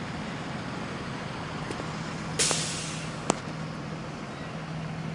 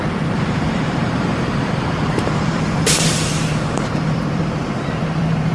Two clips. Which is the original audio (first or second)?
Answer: first